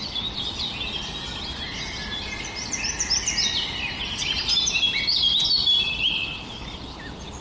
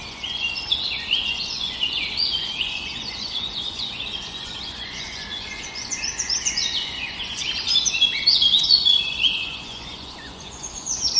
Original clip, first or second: first